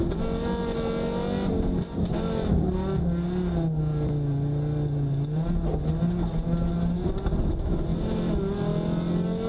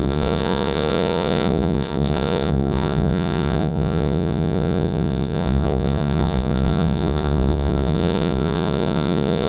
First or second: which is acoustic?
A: first